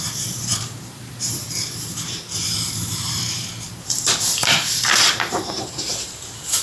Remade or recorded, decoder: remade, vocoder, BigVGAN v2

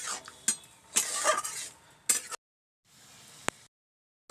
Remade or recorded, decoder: recorded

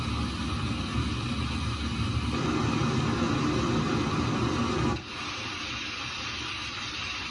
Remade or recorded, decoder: recorded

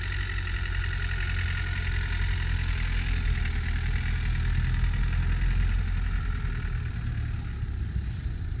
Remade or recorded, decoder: recorded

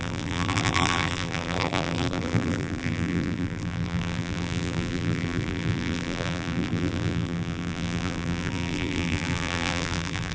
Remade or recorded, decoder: remade, vocoder, BigVGAN v2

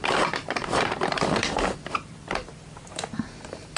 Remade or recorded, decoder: remade, vocoder, BigVGAN v2